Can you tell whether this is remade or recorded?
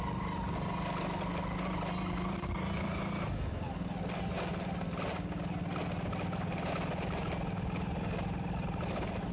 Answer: recorded